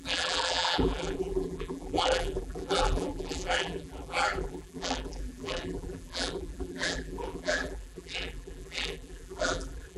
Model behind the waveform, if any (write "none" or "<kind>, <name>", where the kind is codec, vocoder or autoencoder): vocoder, BigVGAN v2